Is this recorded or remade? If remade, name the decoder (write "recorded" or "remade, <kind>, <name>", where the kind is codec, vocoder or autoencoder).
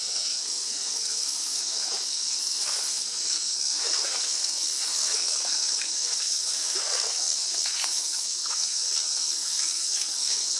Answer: remade, codec, SNAC